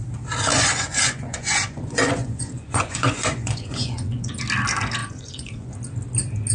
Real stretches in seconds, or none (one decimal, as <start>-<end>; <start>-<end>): 0.0-0.5; 4.4-5.0; 5.7-6.5